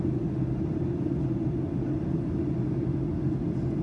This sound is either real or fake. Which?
real